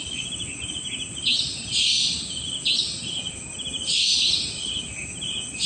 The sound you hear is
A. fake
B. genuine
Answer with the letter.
B